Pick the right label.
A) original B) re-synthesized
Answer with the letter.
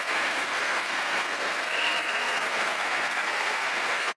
B